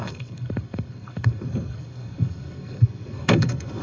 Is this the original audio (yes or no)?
no